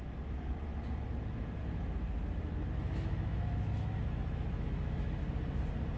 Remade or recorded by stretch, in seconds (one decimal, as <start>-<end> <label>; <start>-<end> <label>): 0.0-1.6 recorded; 1.6-5.2 remade; 5.2-6.0 recorded